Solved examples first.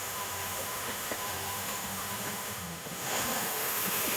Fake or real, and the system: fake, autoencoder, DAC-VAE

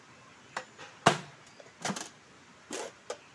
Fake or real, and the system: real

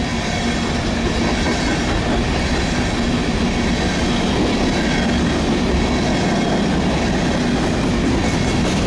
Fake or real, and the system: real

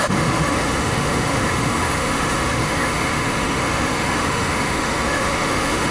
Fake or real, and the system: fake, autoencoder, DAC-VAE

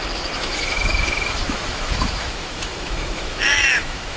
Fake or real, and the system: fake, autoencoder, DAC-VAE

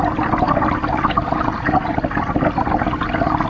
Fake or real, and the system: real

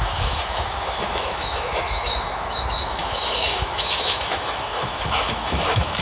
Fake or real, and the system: fake, autoencoder, DAC-VAE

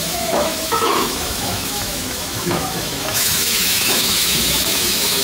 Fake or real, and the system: fake, autoencoder, DAC-VAE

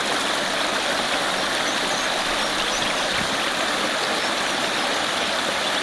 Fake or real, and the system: real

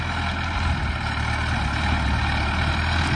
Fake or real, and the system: real